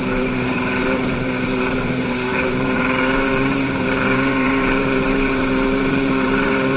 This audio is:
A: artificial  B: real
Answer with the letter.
A